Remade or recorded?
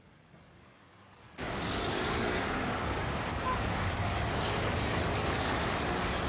remade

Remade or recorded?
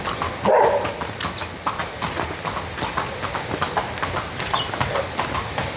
recorded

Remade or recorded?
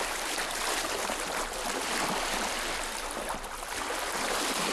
recorded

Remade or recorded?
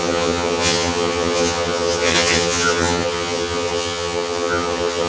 remade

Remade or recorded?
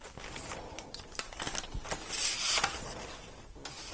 recorded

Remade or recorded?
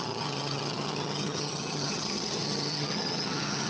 remade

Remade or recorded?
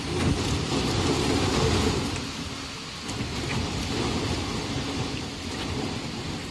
recorded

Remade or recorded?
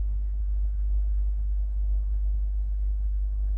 remade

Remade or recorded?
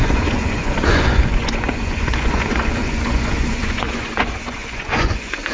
remade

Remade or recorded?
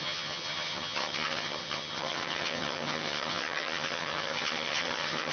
remade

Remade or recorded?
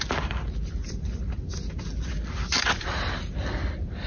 recorded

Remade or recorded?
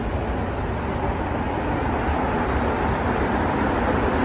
recorded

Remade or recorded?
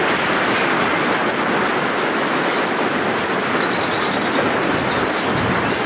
recorded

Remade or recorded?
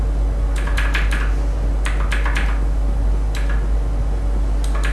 recorded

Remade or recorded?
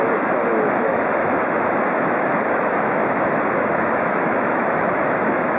remade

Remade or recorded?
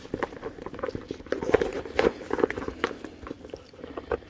recorded